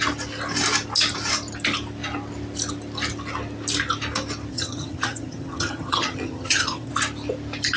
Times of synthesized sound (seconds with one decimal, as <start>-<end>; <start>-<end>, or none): 4.5-6.9